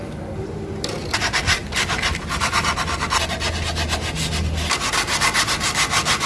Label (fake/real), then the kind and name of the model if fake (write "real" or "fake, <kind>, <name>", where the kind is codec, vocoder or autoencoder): real